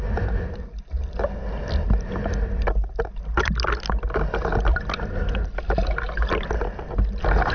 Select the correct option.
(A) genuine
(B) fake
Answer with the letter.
A